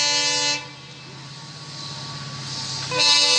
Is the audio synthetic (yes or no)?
no